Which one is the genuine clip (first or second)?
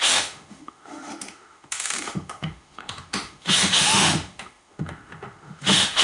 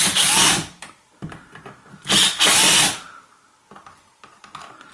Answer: second